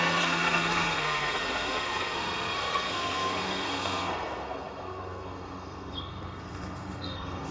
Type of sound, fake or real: fake